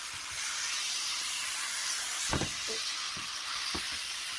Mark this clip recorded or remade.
recorded